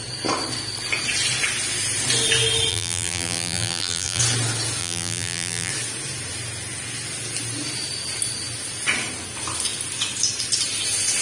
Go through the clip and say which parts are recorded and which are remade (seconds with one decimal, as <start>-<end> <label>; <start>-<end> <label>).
0.0-2.7 recorded; 2.7-4.2 remade; 4.2-4.8 recorded; 4.8-5.7 remade; 5.7-11.2 recorded